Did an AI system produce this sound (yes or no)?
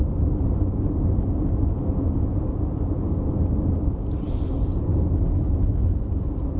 no